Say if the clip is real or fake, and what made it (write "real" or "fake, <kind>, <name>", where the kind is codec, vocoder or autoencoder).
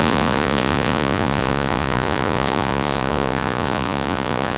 fake, vocoder, Vocos